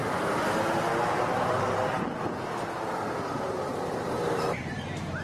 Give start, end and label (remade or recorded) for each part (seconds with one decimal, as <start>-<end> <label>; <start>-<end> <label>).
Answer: 0.0-3.7 recorded; 3.7-5.2 remade